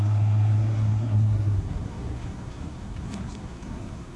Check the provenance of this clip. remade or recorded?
remade